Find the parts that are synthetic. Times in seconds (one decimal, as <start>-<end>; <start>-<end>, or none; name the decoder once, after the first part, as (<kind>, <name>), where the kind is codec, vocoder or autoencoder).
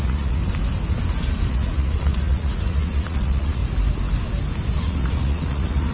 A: 0.0-0.4 (vocoder, Vocos); 1.5-3.6; 4.8-5.9